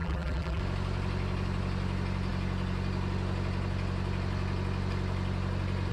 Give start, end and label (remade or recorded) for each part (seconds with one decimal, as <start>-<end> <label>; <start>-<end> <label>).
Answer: 0.0-0.6 remade; 0.6-5.9 recorded

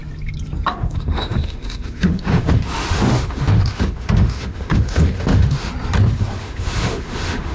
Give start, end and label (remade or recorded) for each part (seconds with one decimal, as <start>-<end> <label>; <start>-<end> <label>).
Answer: 0.0-0.7 recorded; 0.7-5.7 remade; 5.7-6.4 recorded; 6.4-7.5 remade

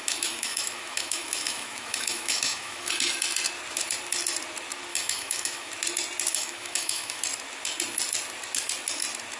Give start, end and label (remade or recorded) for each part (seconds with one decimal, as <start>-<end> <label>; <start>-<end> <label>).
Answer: 0.0-2.9 remade; 2.9-4.9 recorded; 4.9-5.7 remade; 5.7-6.3 recorded; 6.3-7.2 remade; 7.2-9.4 recorded

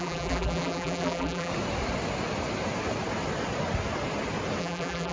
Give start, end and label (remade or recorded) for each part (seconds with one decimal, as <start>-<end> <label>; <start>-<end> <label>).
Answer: 0.0-1.5 remade; 1.5-4.6 recorded; 4.6-5.1 remade

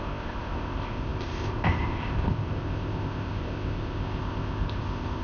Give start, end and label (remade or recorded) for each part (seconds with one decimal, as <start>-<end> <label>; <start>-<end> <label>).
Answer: 0.0-5.2 remade

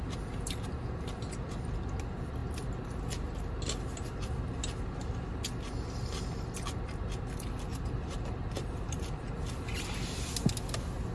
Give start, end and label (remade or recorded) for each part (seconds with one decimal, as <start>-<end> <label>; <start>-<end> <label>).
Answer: 0.0-7.7 recorded; 7.7-8.8 remade; 8.8-11.1 recorded

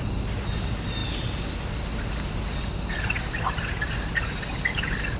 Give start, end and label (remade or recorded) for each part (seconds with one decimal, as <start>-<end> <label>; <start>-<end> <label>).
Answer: 0.0-5.2 recorded